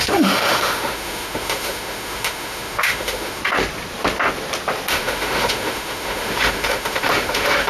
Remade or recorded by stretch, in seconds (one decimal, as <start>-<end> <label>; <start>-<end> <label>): 0.0-3.4 remade; 3.4-4.9 recorded; 4.9-7.7 remade